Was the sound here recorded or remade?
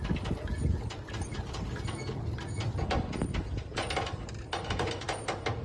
recorded